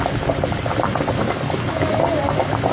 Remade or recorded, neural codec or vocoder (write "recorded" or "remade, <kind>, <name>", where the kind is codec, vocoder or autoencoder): recorded